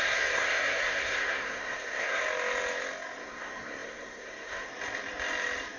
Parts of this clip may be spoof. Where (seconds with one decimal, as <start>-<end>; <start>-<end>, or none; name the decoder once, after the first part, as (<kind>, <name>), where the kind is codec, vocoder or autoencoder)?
0.0-2.2 (codec, SNAC); 3.2-4.7